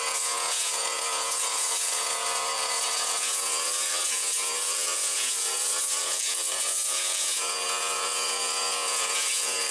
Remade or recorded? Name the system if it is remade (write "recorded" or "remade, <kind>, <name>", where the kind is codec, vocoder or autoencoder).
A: remade, vocoder, Vocos